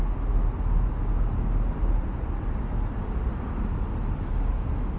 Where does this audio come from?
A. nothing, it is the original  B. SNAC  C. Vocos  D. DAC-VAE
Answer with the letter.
A